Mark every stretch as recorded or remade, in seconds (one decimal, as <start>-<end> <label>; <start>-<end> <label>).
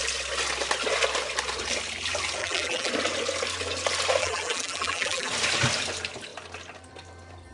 0.0-2.4 recorded; 2.4-2.9 remade; 2.9-4.2 recorded; 4.2-5.3 remade; 5.3-7.5 recorded